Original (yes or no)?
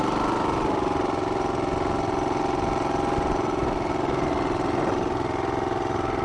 yes